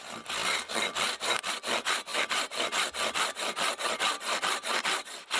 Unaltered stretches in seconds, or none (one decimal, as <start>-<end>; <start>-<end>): 0.0-0.4; 1.5-5.4